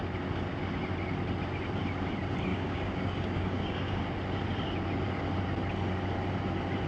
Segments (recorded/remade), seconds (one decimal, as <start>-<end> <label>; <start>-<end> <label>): 0.0-2.5 recorded; 2.5-4.0 remade; 4.0-6.9 recorded